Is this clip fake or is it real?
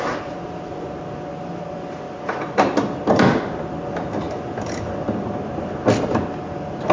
real